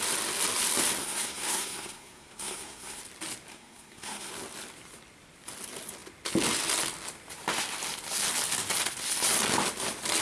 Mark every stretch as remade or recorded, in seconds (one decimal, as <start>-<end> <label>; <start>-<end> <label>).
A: 0.0-1.0 recorded; 1.0-3.0 remade; 3.0-3.5 recorded; 3.5-4.3 remade; 4.3-10.2 recorded